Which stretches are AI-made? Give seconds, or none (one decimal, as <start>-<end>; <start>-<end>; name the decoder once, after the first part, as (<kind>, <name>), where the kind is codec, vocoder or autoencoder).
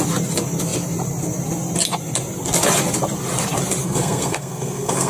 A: 3.8-5.1 (codec, SNAC)